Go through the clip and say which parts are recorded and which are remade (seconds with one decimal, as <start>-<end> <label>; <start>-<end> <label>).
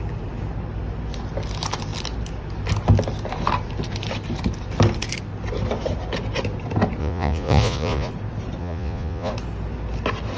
0.0-7.0 recorded; 7.0-8.1 remade; 8.1-8.6 recorded; 8.6-9.3 remade; 9.3-10.4 recorded